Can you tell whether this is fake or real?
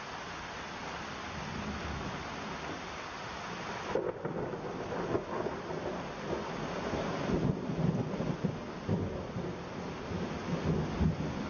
real